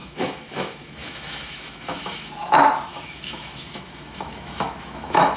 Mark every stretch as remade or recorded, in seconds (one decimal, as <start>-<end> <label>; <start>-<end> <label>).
0.0-2.3 remade; 2.3-2.9 recorded; 2.9-5.4 remade